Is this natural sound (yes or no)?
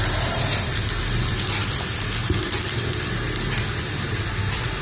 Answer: yes